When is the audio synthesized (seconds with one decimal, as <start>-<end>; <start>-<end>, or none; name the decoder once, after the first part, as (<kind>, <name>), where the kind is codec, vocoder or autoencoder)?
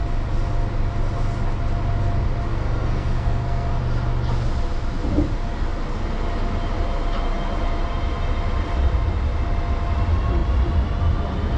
2.5-3.8 (codec, SNAC)